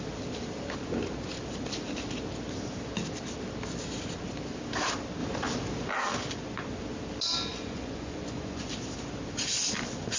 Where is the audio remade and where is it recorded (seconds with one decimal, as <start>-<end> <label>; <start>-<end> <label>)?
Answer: 0.0-7.5 recorded; 7.5-8.7 remade; 8.7-10.2 recorded